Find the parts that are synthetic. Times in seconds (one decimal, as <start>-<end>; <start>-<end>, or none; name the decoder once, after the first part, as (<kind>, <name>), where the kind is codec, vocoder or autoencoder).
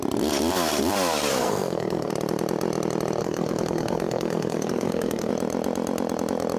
1.3-2.1 (codec, SNAC); 3.2-5.3